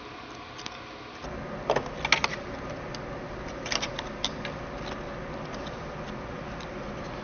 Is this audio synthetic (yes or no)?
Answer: no